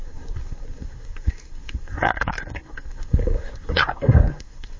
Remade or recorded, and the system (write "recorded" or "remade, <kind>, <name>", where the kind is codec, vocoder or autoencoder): remade, codec, SNAC